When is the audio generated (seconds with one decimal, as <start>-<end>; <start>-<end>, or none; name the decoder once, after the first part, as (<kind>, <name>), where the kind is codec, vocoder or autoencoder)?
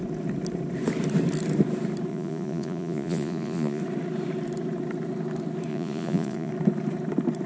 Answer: 2.1-3.8 (vocoder, Vocos); 5.7-6.5